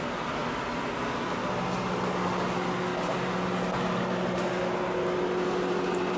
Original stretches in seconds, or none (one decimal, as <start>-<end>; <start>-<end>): 0.0-6.2